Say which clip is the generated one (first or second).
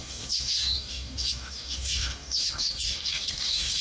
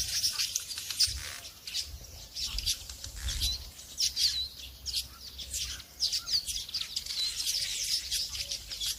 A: first